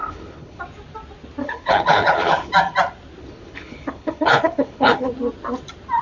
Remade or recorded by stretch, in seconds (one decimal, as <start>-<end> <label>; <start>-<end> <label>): 0.0-0.6 remade; 0.6-1.4 recorded; 1.4-2.5 remade; 2.5-3.2 recorded; 3.2-5.1 remade; 5.1-6.0 recorded